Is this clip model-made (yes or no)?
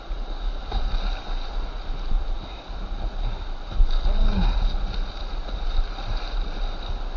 no